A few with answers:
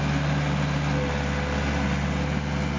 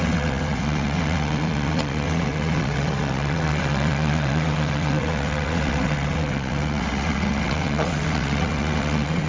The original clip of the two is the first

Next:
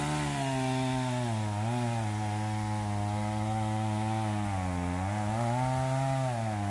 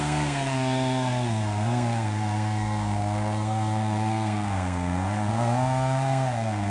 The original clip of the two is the first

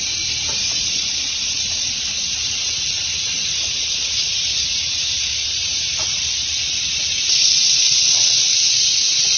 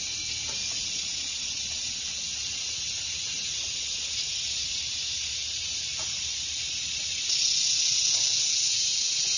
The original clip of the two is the second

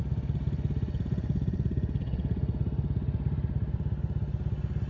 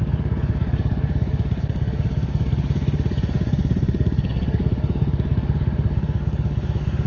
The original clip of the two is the first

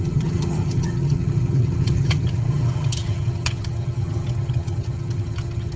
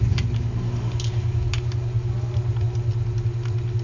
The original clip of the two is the second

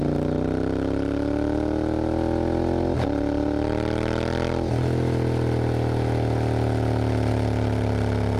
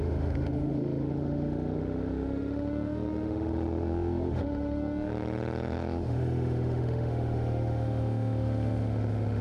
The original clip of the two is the first